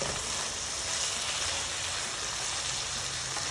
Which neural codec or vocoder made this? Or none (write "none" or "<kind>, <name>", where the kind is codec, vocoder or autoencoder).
none